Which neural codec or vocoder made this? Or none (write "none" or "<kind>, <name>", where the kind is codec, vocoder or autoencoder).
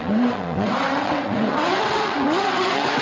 vocoder, WaveNeXt